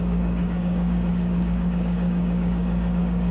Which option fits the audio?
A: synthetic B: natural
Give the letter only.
A